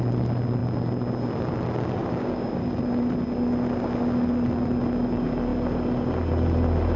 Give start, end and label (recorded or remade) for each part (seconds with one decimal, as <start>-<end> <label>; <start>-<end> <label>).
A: 0.0-2.0 recorded; 2.0-2.7 remade; 2.7-7.0 recorded

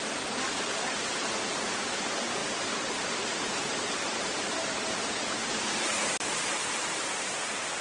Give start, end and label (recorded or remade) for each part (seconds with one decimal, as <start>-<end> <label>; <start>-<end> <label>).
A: 0.0-7.8 recorded

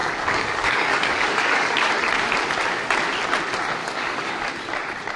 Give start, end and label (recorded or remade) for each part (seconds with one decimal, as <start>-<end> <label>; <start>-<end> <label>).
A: 0.0-1.9 remade; 1.9-3.8 recorded; 3.8-4.5 remade; 4.5-5.2 recorded